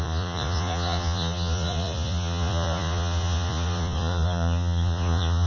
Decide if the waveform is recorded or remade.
remade